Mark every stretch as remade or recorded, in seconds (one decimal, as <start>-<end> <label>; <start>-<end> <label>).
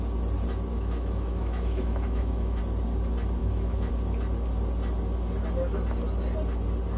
0.0-0.7 recorded; 0.7-2.6 remade; 2.6-3.4 recorded; 3.4-3.9 remade; 3.9-7.0 recorded